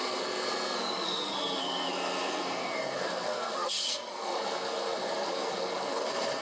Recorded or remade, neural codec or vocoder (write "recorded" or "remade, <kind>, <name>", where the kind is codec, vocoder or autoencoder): remade, codec, SNAC